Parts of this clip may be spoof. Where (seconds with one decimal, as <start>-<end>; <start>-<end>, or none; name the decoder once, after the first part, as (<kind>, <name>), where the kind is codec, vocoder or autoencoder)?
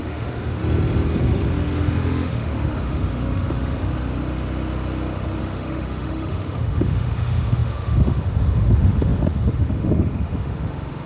0.0-0.6 (autoencoder, DAC-VAE); 1.2-3.8; 5.4-11.1